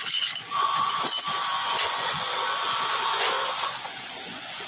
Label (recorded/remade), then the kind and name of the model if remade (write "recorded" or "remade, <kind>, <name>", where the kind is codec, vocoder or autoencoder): remade, vocoder, Vocos